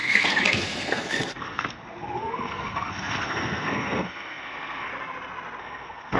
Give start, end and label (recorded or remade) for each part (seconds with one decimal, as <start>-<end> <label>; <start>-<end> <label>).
0.0-4.9 remade; 4.9-5.6 recorded; 5.6-6.2 remade